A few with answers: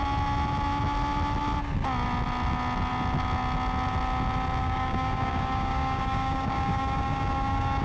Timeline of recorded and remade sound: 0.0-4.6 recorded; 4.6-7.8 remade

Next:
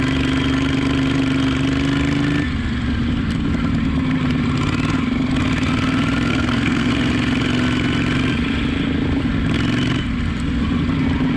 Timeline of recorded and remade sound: 0.0-6.3 recorded; 6.3-6.9 remade; 6.9-11.4 recorded

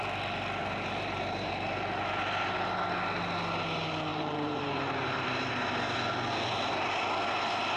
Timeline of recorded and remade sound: 0.0-0.6 recorded; 0.6-1.5 remade; 1.5-4.1 recorded; 4.1-5.5 remade; 5.5-7.8 recorded

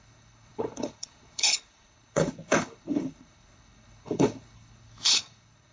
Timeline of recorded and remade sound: 0.0-5.7 remade

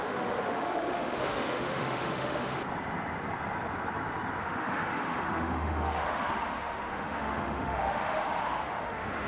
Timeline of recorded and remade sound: 0.0-2.6 remade; 2.6-4.4 recorded; 4.4-9.3 remade

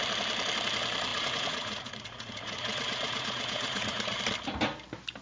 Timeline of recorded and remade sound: 0.0-1.1 recorded; 1.1-4.2 remade; 4.2-5.2 recorded

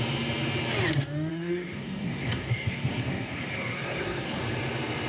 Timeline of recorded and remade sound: 0.0-1.3 recorded; 1.3-4.4 remade; 4.4-5.1 recorded